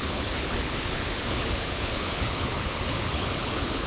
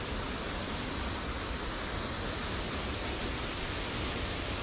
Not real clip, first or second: first